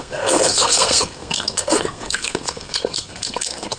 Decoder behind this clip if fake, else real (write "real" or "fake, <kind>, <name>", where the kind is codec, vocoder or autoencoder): fake, codec, SNAC